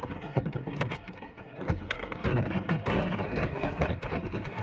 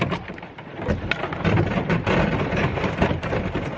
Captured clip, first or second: second